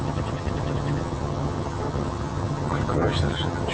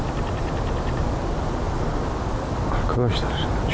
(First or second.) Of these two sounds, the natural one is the second